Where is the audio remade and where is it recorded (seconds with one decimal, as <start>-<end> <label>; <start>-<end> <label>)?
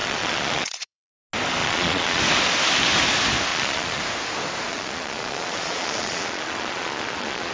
0.0-1.1 remade; 1.1-1.6 recorded; 1.6-2.2 remade; 2.2-3.5 recorded; 3.5-4.0 remade; 4.0-4.7 recorded; 4.7-7.5 remade